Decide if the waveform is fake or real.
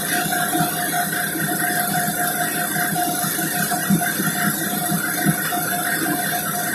real